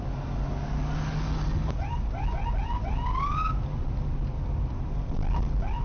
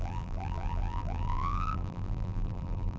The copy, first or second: second